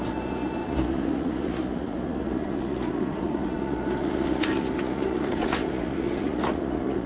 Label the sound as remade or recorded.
remade